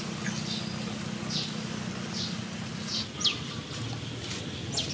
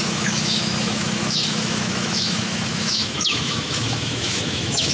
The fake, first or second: second